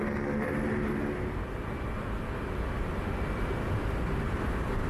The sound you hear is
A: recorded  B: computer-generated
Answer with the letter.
A